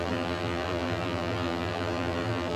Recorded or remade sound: remade